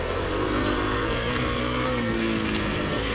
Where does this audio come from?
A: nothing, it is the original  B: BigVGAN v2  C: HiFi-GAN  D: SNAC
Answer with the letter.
D